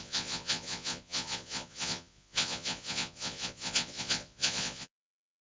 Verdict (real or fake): fake